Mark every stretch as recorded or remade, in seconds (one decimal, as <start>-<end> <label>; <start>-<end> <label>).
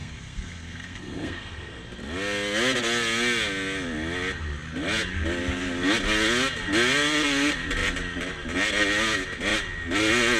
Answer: 0.0-1.8 remade; 1.8-10.4 recorded